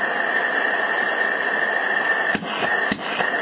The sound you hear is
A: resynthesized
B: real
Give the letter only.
B